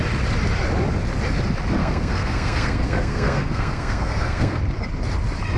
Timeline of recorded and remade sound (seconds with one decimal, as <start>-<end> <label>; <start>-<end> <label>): 0.0-1.8 recorded; 1.8-4.6 remade; 4.6-5.6 recorded